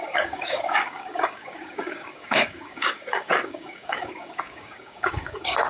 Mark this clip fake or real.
fake